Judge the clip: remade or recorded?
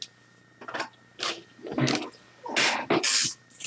recorded